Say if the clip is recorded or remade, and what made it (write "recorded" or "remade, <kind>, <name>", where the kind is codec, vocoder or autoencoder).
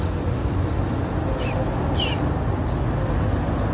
recorded